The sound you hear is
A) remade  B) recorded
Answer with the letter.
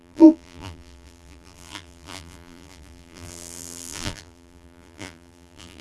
A